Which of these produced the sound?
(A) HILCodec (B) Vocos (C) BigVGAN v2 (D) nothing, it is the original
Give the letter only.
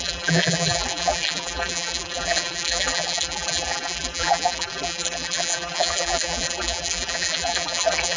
C